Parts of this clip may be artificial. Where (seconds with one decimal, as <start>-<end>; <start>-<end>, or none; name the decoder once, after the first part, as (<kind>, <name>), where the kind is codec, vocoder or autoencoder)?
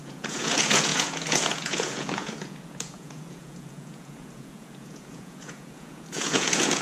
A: 0.0-6.8 (vocoder, Vocos)